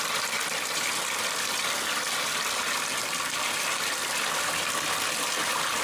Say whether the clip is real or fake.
real